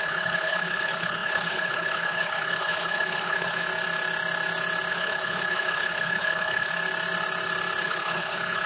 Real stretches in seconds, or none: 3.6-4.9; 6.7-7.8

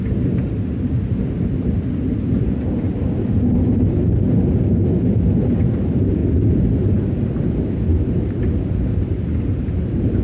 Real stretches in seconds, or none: 0.0-10.2